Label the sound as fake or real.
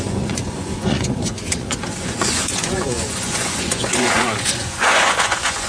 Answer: fake